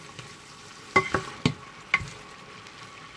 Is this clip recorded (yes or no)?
yes